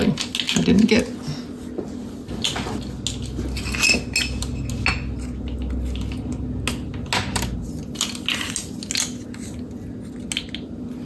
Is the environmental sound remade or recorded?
recorded